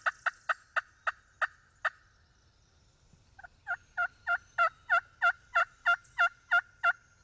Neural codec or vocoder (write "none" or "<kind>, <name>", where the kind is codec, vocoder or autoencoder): none